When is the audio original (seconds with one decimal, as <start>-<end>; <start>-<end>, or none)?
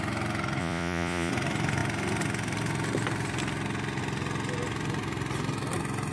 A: 0.0-0.6; 1.3-6.1